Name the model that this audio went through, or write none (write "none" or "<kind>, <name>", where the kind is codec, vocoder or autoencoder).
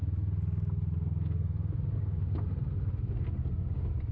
none